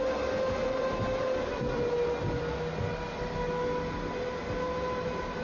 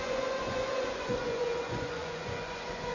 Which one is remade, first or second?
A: second